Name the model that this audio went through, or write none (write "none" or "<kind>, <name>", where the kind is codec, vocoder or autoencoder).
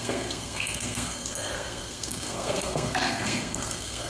codec, SNAC